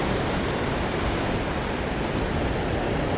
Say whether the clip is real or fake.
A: real